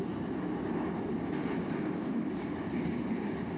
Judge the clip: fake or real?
real